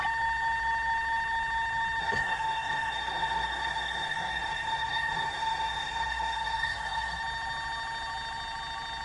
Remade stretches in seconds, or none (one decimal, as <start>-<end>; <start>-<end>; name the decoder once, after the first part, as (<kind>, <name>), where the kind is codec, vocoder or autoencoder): 2.0-7.2 (codec, SNAC)